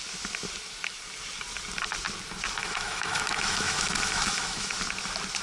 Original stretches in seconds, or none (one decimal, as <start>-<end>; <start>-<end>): 0.0-2.6; 4.8-5.4